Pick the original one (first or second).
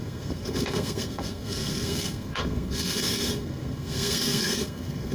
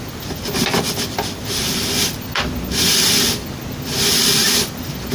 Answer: second